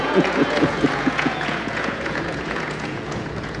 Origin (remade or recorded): remade